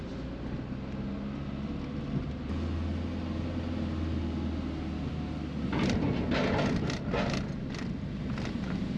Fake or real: real